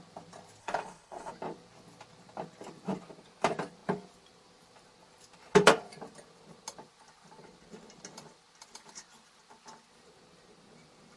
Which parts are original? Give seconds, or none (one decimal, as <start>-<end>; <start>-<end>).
0.0-0.6; 1.3-11.2